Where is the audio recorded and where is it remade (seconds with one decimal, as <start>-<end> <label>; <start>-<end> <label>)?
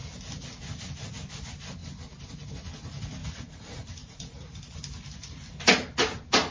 0.0-3.2 recorded; 3.2-4.6 remade; 4.6-6.5 recorded